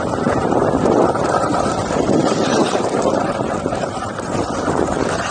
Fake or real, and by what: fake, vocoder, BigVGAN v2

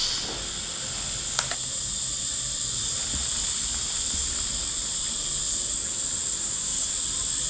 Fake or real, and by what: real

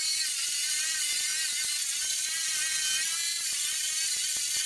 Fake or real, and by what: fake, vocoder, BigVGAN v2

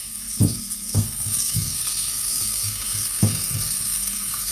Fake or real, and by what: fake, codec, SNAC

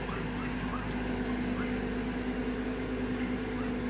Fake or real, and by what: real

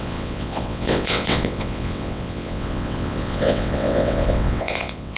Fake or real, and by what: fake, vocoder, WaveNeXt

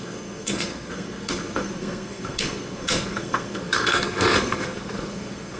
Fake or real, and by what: fake, codec, SNAC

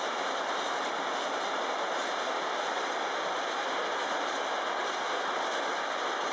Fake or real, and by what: real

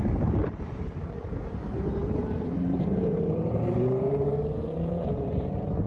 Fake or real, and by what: fake, vocoder, BigVGAN v2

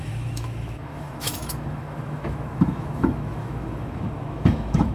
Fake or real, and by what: fake, autoencoder, DAC-VAE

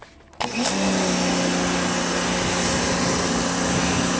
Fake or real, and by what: real